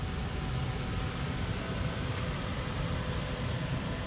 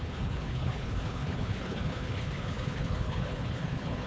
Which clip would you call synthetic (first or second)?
second